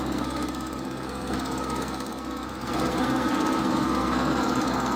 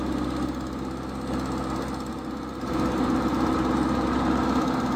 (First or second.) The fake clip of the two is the first